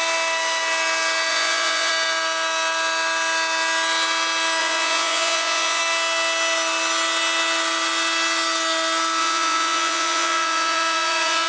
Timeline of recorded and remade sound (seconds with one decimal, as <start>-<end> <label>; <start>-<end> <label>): 0.0-1.3 recorded; 1.3-1.9 remade; 1.9-4.6 recorded; 4.6-5.8 remade; 5.8-9.2 recorded; 9.2-11.5 remade